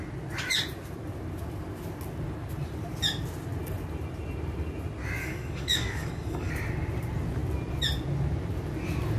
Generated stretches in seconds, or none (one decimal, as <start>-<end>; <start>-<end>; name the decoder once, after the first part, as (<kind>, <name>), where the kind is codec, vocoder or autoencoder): 5.2-6.5 (codec, DAC)